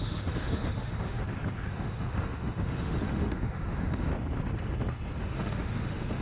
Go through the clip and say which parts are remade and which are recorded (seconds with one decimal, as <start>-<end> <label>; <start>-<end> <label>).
0.0-1.2 remade; 1.2-1.7 recorded; 1.7-4.1 remade; 4.1-5.2 recorded; 5.2-6.2 remade